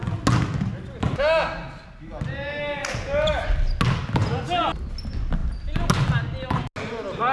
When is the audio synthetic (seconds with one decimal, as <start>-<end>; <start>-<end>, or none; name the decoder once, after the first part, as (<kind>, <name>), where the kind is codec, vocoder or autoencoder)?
none